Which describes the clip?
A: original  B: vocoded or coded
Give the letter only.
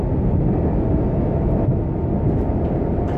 A